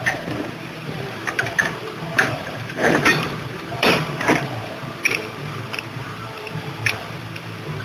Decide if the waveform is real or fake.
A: fake